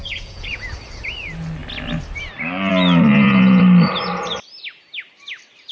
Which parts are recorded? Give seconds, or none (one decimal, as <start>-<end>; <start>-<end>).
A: 0.6-3.1; 3.6-5.7